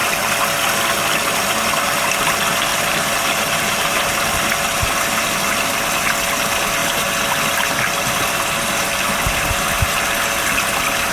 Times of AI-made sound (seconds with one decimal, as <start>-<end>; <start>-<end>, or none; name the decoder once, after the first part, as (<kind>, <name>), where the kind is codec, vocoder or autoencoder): 2.7-4.2 (vocoder, BigVGAN v2)